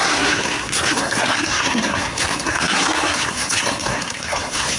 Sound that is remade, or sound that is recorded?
remade